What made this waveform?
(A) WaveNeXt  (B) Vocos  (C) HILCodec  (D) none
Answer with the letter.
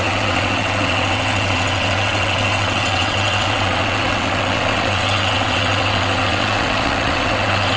A